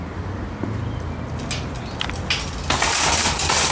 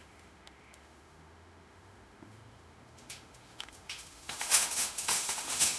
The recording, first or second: first